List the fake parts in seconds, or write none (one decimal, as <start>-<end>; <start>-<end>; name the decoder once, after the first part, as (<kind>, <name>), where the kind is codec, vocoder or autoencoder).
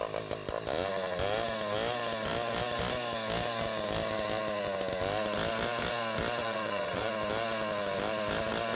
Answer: 6.4-7.1 (vocoder, Vocos)